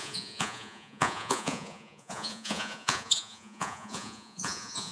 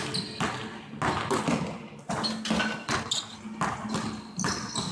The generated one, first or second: first